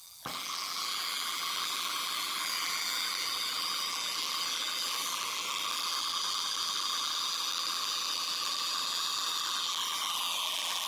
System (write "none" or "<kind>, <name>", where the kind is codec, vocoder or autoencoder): vocoder, BigVGAN v2